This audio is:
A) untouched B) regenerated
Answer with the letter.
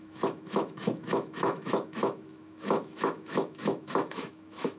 B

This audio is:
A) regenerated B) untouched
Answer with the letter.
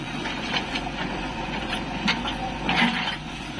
A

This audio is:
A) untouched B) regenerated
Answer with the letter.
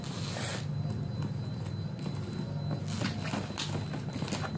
A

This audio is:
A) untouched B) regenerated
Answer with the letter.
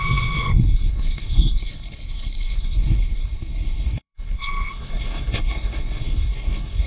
B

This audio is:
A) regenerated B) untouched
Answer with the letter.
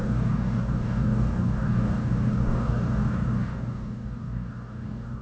A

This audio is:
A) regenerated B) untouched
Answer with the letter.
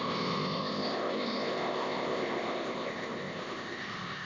A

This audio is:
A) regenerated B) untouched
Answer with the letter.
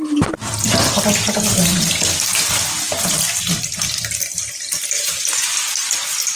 B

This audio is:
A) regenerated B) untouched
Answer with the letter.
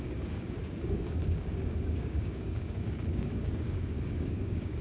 A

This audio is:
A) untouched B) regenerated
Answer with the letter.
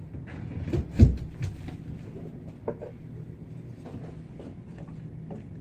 A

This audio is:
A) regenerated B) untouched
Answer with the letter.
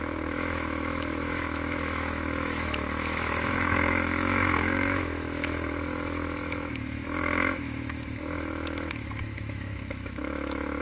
A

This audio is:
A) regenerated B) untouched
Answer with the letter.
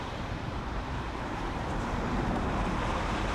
A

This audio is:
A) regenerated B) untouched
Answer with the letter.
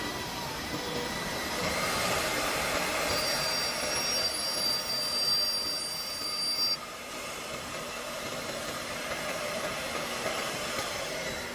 A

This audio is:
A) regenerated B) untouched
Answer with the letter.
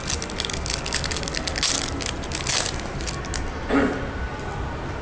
B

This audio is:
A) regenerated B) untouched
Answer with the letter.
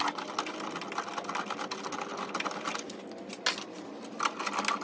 B